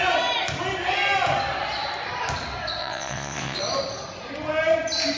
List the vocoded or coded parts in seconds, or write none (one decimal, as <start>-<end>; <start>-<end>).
2.8-3.6